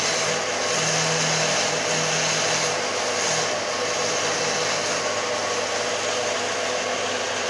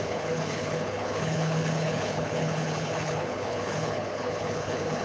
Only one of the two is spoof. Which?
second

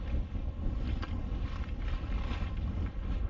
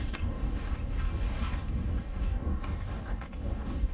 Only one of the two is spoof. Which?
second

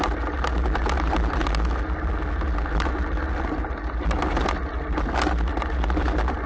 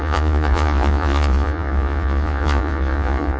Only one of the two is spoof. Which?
second